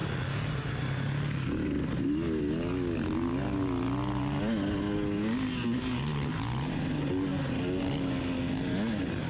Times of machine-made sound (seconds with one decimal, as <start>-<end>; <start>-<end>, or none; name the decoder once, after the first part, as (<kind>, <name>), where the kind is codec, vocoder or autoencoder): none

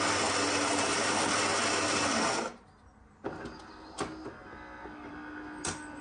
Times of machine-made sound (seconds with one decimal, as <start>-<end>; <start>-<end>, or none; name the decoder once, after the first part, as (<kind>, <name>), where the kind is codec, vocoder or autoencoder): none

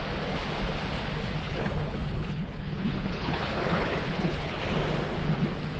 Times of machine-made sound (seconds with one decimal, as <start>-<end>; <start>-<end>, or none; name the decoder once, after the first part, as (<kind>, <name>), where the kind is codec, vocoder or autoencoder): 1.4-4.6 (codec, HILCodec)

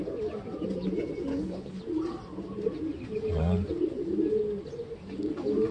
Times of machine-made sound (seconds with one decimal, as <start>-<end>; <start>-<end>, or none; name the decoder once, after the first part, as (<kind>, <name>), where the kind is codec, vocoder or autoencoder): 1.3-1.8 (codec, HILCodec)